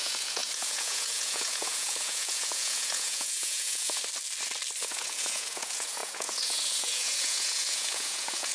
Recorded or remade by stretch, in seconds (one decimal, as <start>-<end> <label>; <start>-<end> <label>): 0.0-4.0 remade; 4.0-4.8 recorded; 4.8-8.5 remade